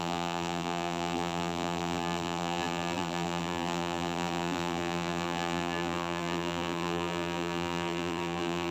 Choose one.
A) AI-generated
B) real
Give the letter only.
A